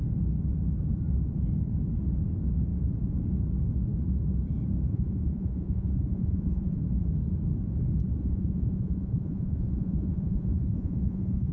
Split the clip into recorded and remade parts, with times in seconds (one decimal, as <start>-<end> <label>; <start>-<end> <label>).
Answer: 0.0-4.9 recorded; 4.9-6.8 remade; 6.8-8.2 recorded; 8.2-11.5 remade